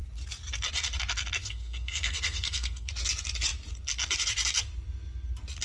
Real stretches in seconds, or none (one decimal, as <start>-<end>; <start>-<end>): 0.0-1.4; 2.9-5.6